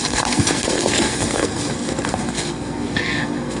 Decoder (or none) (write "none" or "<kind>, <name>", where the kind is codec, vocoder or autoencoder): codec, SNAC